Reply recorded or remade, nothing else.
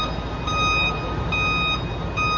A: recorded